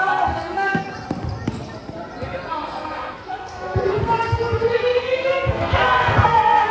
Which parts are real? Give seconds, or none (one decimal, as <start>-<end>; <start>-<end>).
0.9-2.5